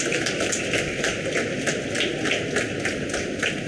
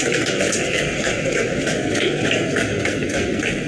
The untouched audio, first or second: first